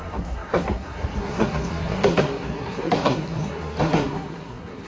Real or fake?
fake